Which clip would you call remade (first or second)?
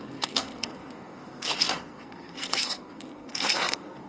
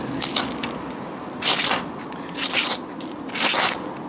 first